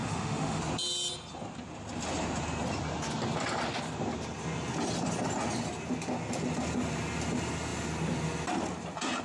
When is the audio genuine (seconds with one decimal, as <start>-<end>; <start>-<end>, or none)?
0.6-9.2